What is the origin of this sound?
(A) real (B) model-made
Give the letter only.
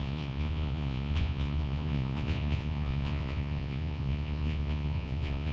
B